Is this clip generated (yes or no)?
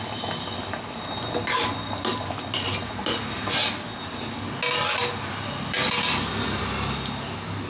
no